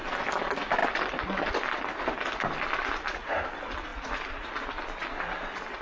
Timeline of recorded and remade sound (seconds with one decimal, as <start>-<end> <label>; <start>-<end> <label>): 0.0-5.8 recorded